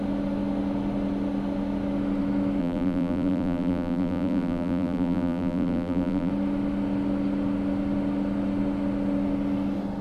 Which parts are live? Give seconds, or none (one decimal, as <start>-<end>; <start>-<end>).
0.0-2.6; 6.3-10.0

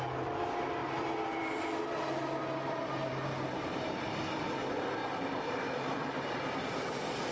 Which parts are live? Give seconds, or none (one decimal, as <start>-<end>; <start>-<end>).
0.0-0.8; 1.4-3.0; 4.2-5.0; 6.2-7.3

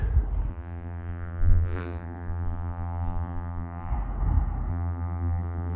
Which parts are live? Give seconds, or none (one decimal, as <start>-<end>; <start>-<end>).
0.0-0.5; 3.9-4.7

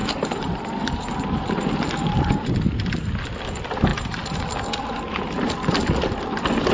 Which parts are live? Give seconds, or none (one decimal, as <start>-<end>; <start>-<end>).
2.5-3.9; 4.5-6.7

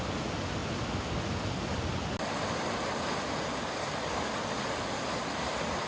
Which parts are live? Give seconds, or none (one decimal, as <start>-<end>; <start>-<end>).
0.0-5.9